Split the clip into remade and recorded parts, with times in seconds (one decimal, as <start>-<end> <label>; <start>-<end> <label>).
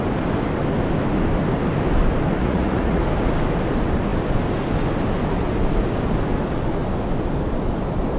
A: 0.0-2.4 recorded; 2.4-3.0 remade; 3.0-8.2 recorded